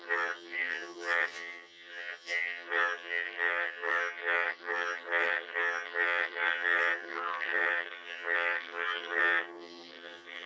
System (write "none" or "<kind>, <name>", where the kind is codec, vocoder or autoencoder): vocoder, HiFi-GAN